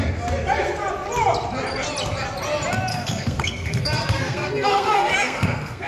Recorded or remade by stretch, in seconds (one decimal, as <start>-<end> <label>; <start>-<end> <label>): 0.0-2.9 recorded; 2.9-5.9 remade